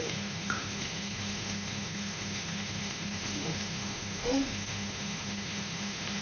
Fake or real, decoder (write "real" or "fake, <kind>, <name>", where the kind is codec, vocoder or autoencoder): fake, autoencoder, DAC-VAE